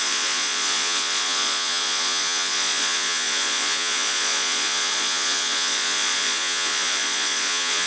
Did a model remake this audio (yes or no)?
yes